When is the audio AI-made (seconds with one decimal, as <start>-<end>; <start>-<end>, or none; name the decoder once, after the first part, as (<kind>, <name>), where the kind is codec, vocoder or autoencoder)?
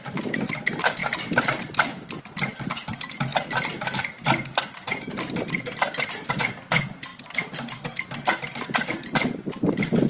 none